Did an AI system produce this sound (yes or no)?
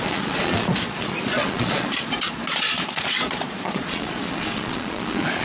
yes